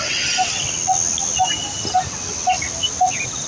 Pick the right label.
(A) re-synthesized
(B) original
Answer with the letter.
B